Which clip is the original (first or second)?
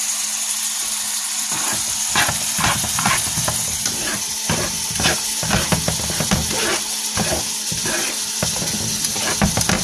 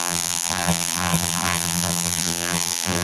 first